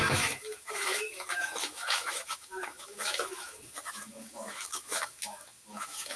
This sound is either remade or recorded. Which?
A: remade